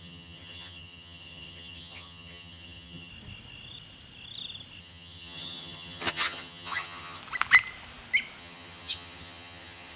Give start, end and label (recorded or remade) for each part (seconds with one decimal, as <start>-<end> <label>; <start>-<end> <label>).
0.0-3.1 remade; 3.1-4.8 recorded; 4.8-7.2 remade; 7.2-8.4 recorded; 8.4-10.0 remade